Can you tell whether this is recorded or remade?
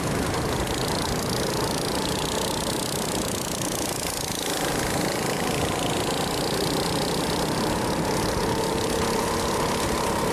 recorded